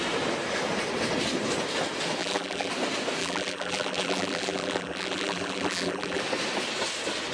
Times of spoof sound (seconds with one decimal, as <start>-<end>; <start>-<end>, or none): 2.2-2.7; 3.2-6.2